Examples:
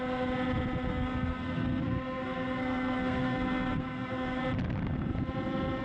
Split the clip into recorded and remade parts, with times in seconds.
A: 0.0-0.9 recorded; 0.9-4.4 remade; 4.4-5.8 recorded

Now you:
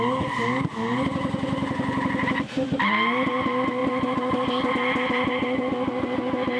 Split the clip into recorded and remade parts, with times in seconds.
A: 0.0-6.6 recorded

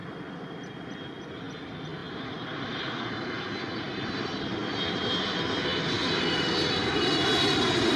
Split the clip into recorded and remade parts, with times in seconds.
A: 0.0-8.0 recorded